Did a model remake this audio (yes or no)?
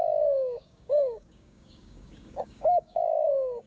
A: yes